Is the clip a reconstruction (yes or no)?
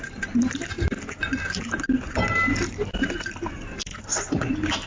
no